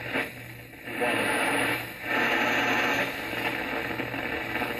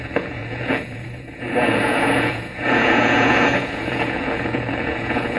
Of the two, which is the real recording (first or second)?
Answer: first